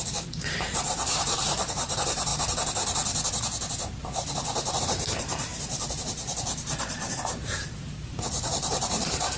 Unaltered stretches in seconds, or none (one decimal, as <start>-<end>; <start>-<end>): 2.3-4.8; 5.5-6.9